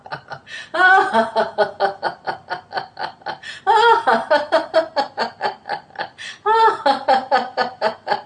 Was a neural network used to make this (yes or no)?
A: no